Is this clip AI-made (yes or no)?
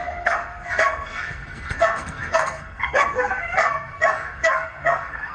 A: yes